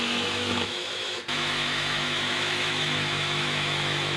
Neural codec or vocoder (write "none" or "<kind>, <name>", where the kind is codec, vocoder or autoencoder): autoencoder, DAC-VAE